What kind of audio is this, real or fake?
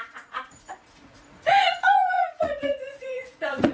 fake